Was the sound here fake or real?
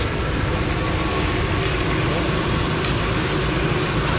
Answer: real